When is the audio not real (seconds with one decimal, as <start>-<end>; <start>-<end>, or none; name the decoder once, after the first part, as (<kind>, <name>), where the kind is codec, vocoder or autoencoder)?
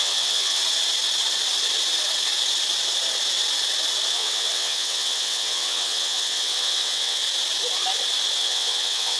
0.0-0.6 (vocoder, WaveNeXt); 4.1-7.2; 8.4-9.2